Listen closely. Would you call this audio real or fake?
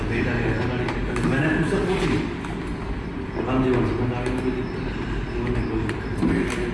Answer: real